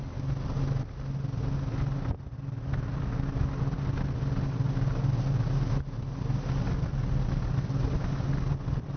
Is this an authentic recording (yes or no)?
yes